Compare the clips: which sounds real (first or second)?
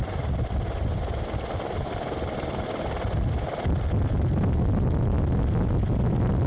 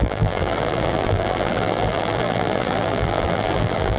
first